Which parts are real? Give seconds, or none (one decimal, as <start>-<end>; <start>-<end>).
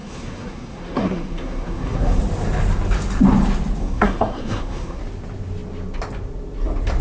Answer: 2.2-3.8; 5.0-7.0